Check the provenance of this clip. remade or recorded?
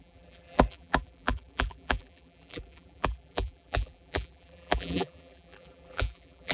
remade